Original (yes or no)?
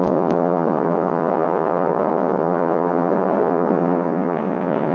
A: no